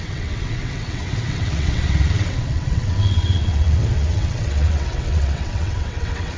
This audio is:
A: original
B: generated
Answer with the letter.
B